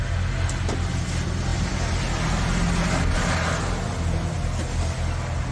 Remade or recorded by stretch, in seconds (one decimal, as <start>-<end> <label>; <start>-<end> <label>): 0.0-5.5 recorded